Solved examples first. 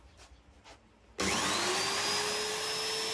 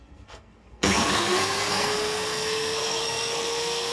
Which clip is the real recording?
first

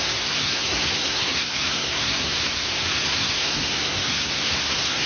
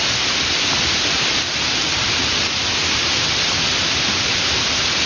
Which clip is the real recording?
second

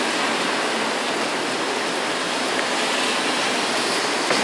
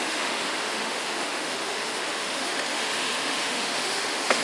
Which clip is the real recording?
first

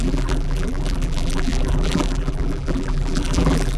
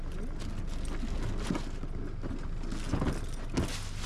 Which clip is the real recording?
second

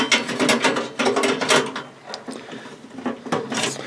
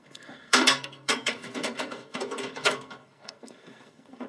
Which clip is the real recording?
first